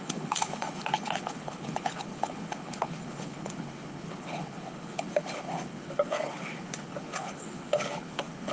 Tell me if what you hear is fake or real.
fake